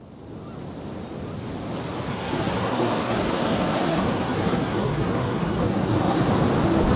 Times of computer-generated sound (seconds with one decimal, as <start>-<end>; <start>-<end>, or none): 2.1-6.3